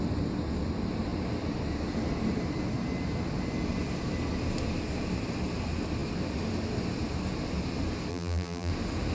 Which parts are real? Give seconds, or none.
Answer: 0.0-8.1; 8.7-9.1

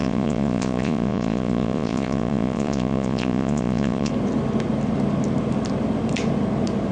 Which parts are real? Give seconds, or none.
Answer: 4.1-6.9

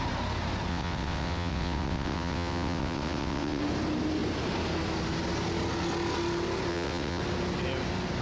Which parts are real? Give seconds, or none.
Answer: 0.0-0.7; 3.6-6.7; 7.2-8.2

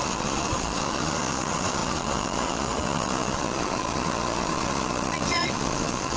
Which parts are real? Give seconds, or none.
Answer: none